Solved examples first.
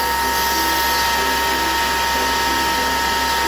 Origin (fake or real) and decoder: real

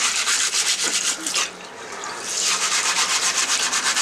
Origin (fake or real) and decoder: real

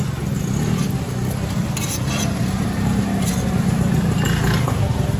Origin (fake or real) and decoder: real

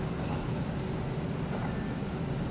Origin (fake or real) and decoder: real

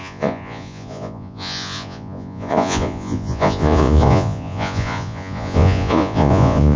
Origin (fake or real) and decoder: fake, vocoder, Vocos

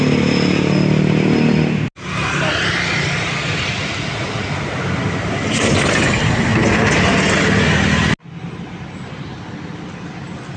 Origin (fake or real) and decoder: real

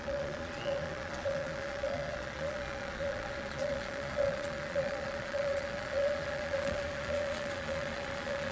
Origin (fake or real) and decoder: fake, vocoder, Vocos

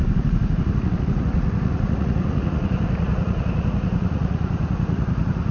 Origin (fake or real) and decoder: fake, vocoder, Vocos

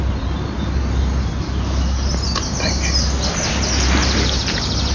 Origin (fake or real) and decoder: real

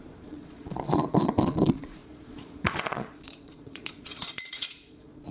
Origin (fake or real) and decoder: fake, vocoder, Vocos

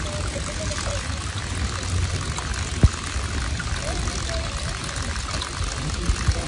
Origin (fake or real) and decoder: real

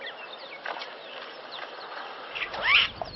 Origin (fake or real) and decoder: real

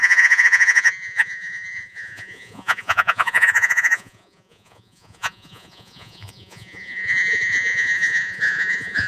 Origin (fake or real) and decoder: fake, vocoder, Vocos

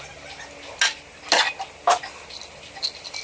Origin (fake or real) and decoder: real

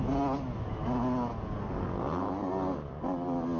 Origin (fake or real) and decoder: real